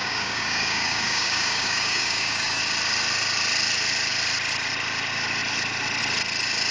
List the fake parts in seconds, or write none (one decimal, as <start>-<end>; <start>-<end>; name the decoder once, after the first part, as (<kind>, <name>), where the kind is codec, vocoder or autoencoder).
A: 0.0-2.6 (codec, DAC)